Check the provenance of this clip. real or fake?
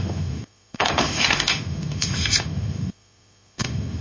fake